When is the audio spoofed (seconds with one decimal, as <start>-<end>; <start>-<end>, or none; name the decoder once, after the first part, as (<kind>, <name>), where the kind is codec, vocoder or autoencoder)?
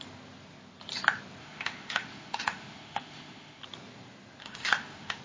1.4-3.6 (autoencoder, DAC-VAE); 4.4-5.2